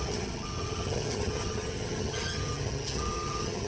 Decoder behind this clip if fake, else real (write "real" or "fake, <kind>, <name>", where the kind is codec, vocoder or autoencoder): fake, vocoder, HiFi-GAN